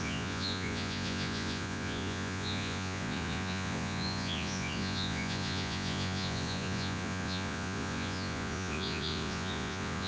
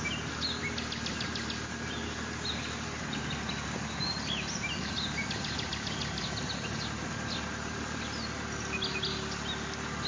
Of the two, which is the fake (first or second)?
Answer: first